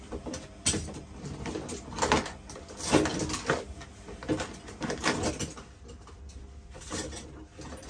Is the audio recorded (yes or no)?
yes